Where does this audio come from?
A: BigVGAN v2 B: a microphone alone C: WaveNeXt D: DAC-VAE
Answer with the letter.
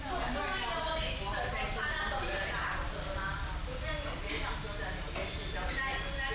B